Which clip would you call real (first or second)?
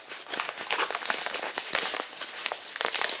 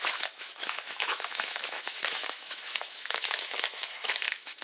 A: first